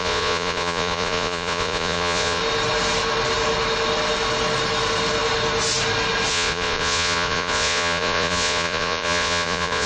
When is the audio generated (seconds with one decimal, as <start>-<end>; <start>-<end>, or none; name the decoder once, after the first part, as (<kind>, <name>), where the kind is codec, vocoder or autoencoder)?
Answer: 0.0-2.4 (vocoder, Vocos); 6.3-9.9